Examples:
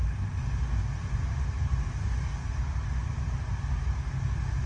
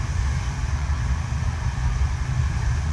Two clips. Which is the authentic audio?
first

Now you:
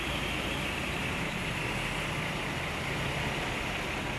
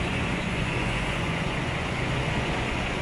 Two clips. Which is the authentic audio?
first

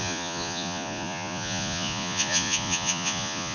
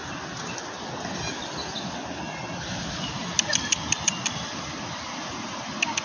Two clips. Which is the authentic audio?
second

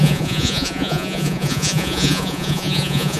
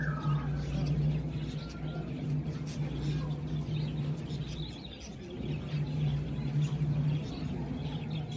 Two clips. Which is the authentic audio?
second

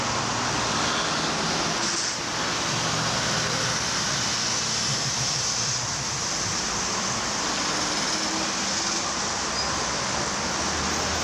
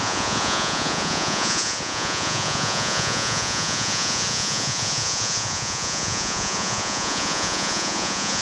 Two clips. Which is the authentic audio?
first